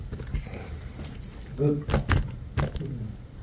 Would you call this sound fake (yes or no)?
yes